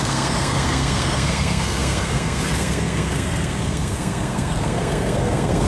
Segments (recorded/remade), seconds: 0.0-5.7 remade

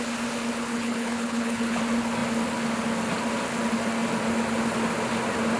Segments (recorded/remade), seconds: 0.0-0.7 recorded; 0.7-1.8 remade; 1.8-5.6 recorded

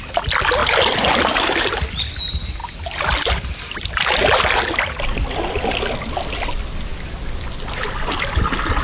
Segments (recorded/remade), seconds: 0.0-0.6 recorded; 0.6-2.2 remade; 2.2-8.8 recorded

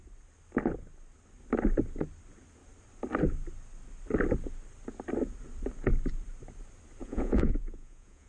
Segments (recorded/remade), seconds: 0.0-7.0 recorded; 7.0-8.3 remade

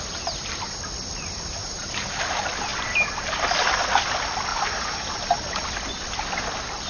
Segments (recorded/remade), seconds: 0.0-1.6 recorded; 1.6-2.2 remade; 2.2-4.5 recorded; 4.5-5.2 remade; 5.2-6.9 recorded

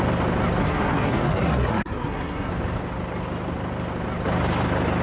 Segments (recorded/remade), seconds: 0.0-0.6 recorded; 0.6-2.5 remade; 2.5-5.0 recorded